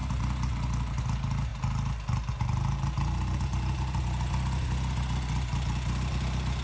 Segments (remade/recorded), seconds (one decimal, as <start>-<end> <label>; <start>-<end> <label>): 0.0-6.6 recorded